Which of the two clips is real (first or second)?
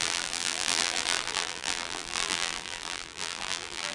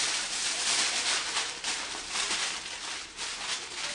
second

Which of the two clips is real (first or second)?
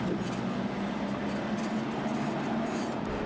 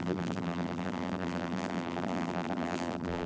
first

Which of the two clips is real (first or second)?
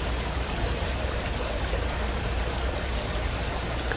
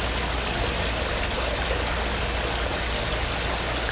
second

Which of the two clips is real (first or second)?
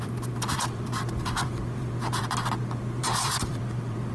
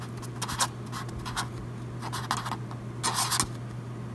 second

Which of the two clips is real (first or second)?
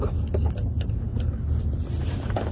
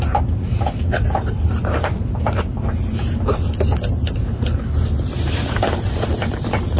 first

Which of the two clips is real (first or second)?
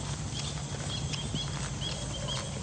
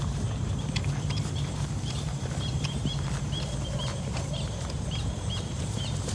first